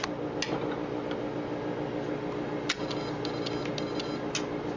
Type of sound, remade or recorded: recorded